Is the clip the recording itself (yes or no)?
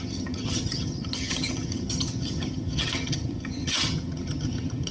no